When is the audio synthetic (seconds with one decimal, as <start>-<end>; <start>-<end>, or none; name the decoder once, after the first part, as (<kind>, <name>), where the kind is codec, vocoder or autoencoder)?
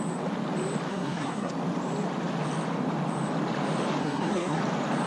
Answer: 0.9-1.5 (codec, SNAC); 4.0-4.6